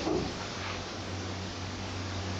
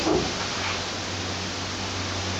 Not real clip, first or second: first